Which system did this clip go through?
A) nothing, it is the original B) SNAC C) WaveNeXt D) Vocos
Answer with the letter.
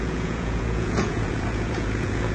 D